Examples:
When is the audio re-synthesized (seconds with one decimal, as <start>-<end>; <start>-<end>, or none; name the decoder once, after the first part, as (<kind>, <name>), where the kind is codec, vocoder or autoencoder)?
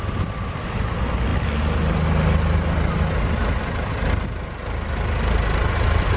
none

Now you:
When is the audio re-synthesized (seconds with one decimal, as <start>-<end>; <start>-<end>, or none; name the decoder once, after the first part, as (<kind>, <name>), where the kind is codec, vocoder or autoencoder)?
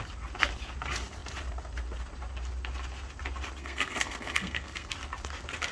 3.6-4.9 (codec, SNAC)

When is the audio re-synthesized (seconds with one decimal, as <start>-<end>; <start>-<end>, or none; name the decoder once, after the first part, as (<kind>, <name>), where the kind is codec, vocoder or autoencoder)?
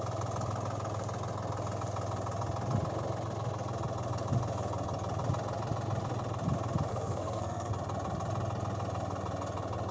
6.9-7.7 (codec, SNAC)